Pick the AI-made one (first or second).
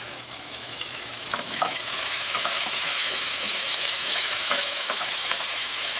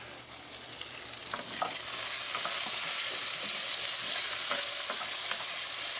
first